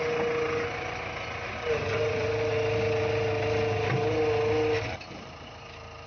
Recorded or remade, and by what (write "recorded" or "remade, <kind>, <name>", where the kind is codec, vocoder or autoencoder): recorded